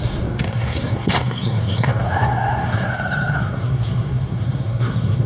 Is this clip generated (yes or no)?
yes